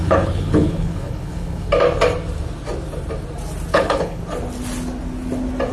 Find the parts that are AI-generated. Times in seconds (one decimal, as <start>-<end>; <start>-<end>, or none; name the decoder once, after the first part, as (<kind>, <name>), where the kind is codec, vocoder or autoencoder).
0.0-1.7 (codec, HILCodec); 3.7-4.2